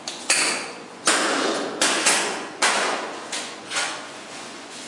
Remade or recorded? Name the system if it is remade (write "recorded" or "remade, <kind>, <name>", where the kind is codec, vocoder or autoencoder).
remade, vocoder, Vocos